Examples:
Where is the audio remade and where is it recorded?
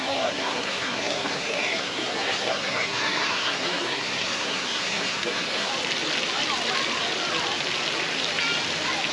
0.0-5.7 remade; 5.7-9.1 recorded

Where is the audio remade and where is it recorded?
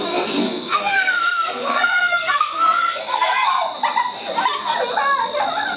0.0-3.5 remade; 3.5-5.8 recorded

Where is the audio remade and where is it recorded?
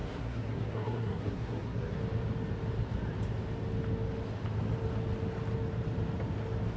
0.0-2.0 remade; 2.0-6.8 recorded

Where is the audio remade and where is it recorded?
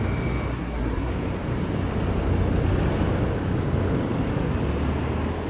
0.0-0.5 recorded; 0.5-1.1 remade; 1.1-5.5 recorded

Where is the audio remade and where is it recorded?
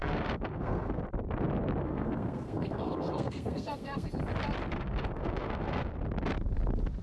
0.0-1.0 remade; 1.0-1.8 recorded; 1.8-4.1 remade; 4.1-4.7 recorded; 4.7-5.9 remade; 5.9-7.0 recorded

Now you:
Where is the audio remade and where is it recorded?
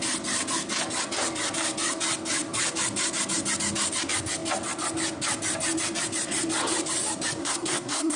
0.0-7.4 recorded; 7.4-8.2 remade